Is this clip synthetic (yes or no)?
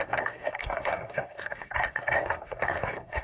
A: yes